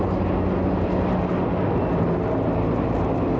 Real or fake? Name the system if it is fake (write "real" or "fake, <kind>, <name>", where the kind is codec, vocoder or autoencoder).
real